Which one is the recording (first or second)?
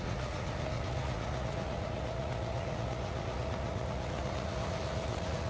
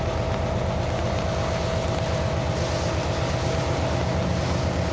second